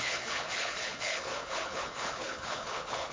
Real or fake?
fake